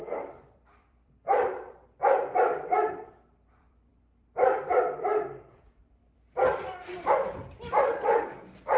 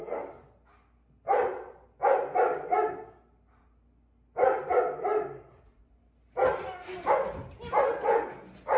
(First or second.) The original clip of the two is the second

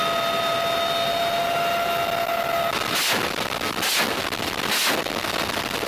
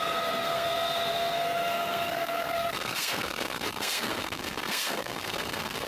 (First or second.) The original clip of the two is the first